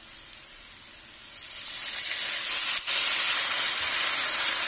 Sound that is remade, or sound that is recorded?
recorded